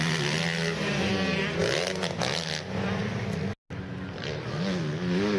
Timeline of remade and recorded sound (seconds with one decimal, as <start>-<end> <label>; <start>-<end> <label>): 0.0-5.4 recorded